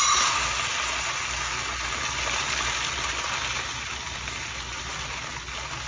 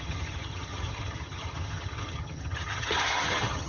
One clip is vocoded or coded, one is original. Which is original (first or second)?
first